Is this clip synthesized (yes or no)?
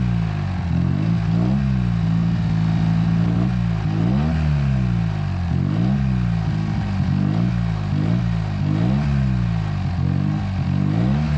no